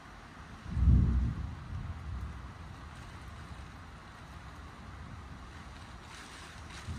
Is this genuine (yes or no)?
yes